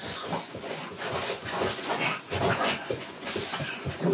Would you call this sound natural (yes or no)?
no